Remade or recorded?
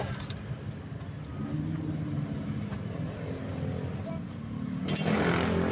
recorded